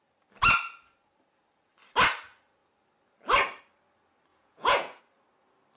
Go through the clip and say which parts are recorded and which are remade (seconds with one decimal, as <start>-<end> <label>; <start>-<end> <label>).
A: 0.0-4.3 recorded; 4.3-5.0 remade; 5.0-5.8 recorded